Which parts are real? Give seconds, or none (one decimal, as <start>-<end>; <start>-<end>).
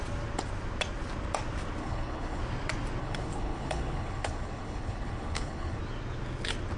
0.0-1.8; 2.4-3.0; 5.8-6.8